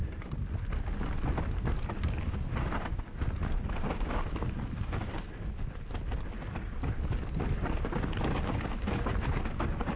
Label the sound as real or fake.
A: real